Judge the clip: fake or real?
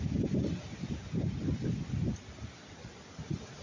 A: real